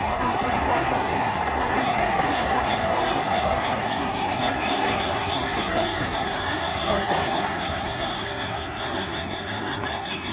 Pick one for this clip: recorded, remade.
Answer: remade